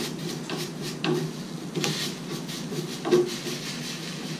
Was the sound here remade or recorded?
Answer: recorded